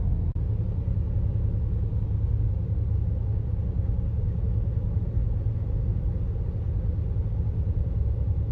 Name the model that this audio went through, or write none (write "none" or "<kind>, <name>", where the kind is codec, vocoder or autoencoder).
none